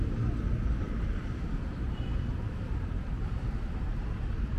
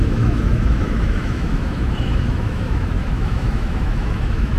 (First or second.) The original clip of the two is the first